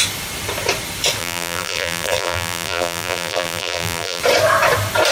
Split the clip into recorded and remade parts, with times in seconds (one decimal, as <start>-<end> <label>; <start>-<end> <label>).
0.0-1.2 recorded; 1.2-4.2 remade; 4.2-5.1 recorded